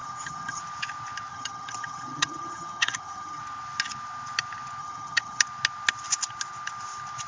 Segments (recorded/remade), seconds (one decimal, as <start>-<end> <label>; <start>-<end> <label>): 0.0-0.6 remade; 0.6-1.3 recorded; 1.3-3.4 remade; 3.4-4.8 recorded; 4.8-5.4 remade; 5.4-7.3 recorded